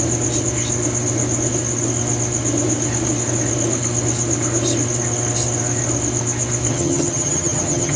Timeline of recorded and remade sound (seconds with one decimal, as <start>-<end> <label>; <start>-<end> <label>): 0.0-6.7 recorded; 6.7-8.0 remade